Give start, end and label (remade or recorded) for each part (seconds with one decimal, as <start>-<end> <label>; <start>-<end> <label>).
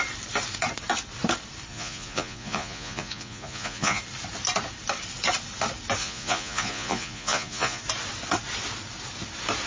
0.0-1.7 recorded; 1.7-4.0 remade; 4.0-6.0 recorded; 6.0-7.8 remade; 7.8-9.7 recorded